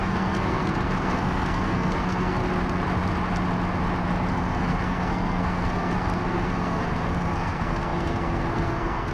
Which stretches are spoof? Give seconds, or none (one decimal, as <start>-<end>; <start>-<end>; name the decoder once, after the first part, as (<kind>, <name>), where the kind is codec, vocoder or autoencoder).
0.0-2.4 (codec, SNAC); 4.3-9.1

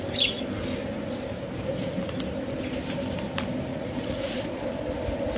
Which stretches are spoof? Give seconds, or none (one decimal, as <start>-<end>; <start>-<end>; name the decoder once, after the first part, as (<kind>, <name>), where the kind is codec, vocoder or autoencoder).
3.7-4.4 (vocoder, Vocos)